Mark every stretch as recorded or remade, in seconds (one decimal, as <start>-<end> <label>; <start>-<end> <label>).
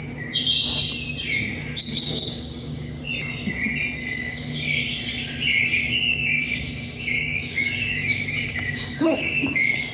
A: 0.0-1.8 recorded; 1.8-3.0 remade; 3.0-4.0 recorded; 4.0-4.9 remade; 4.9-5.8 recorded; 5.8-9.9 remade